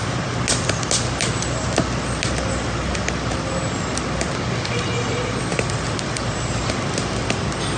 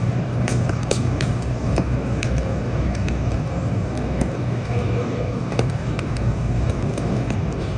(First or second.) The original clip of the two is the first